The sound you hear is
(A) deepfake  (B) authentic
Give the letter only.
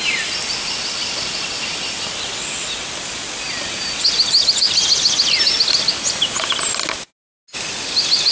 B